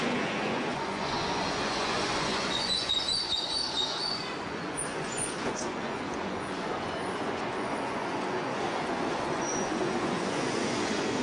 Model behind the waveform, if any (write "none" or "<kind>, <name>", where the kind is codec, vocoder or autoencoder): vocoder, Vocos